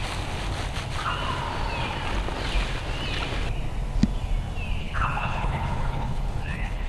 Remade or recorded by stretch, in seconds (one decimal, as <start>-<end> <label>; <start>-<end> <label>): 0.0-4.8 recorded; 4.8-6.9 remade